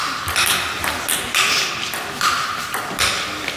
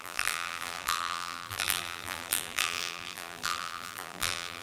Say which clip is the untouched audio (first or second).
first